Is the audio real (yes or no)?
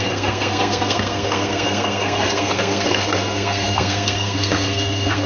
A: no